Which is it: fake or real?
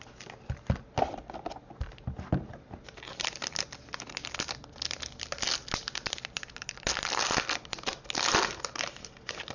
real